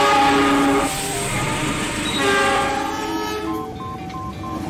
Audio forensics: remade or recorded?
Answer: recorded